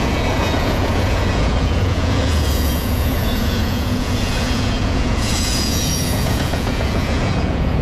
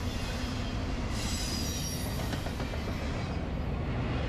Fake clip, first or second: first